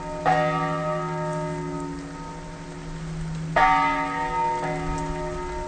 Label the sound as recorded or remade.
recorded